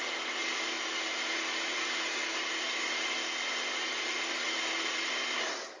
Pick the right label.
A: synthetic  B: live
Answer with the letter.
B